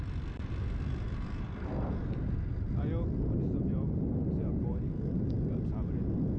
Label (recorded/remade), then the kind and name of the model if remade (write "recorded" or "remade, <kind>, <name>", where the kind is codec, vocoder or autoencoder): recorded